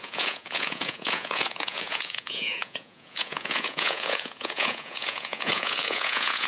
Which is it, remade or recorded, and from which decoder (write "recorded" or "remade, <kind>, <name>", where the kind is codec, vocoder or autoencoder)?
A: remade, vocoder, Vocos